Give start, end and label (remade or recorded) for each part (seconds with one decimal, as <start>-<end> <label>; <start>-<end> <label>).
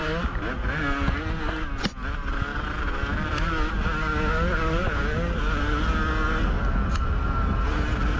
0.0-8.2 recorded